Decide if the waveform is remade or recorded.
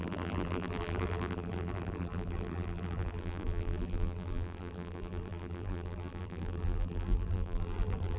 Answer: remade